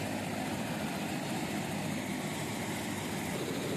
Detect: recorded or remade recorded